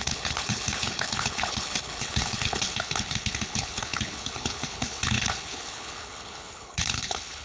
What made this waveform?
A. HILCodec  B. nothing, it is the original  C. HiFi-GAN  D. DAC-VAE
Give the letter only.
A